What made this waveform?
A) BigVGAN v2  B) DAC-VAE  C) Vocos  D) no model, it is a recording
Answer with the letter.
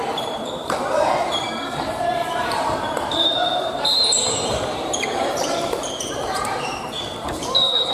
A